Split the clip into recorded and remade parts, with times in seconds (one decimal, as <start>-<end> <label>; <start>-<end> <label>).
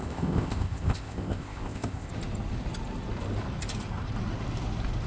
0.0-2.1 remade; 2.1-5.1 recorded